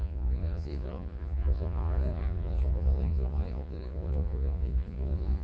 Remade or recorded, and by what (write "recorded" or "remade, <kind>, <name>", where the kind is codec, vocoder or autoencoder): remade, vocoder, Vocos